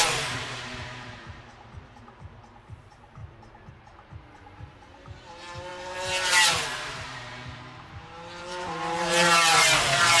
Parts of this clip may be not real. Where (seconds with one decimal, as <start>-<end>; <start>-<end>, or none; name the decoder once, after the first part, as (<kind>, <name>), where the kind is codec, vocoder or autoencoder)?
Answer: 0.0-3.2 (vocoder, BigVGAN v2); 3.7-10.2